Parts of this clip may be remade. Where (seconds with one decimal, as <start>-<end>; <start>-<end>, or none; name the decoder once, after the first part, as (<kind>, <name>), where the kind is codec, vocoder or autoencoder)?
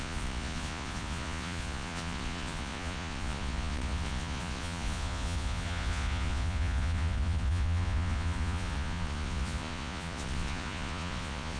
0.0-11.6 (vocoder, Vocos)